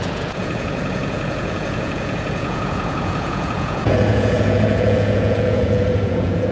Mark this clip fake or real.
fake